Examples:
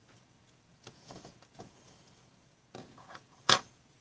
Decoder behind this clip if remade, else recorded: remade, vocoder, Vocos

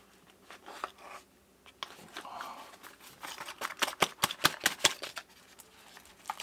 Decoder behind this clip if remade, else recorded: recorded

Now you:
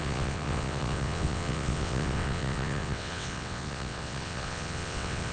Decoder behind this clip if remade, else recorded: remade, vocoder, WaveNeXt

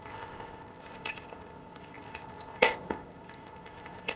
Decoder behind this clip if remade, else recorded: remade, codec, ZipCodec